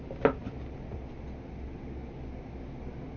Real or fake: real